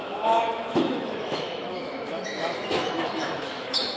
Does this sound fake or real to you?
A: fake